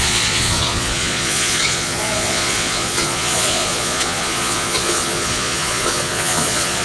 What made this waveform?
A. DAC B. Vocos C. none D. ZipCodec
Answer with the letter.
B